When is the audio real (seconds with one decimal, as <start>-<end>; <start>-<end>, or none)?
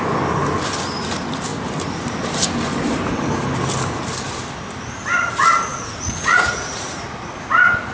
0.0-5.7; 7.2-7.9